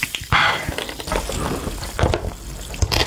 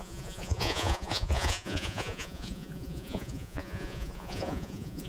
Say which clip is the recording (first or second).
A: first